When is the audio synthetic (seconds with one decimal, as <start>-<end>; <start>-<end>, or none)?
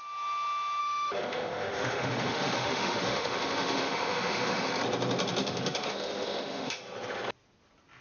0.8-4.7; 5.4-6.8